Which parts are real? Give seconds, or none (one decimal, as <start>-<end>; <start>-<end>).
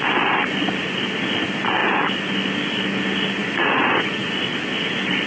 0.0-3.4; 4.3-5.3